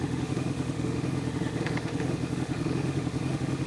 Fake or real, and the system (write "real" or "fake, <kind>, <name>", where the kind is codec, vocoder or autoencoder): fake, autoencoder, DAC-VAE